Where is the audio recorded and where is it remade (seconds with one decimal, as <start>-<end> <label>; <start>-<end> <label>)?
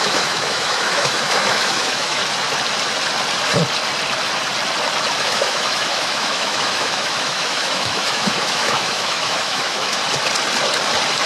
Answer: 0.0-2.2 remade; 2.2-5.2 recorded; 5.2-10.0 remade; 10.0-11.3 recorded